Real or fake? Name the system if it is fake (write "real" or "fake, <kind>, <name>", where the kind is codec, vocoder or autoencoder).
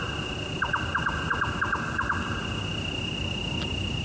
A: real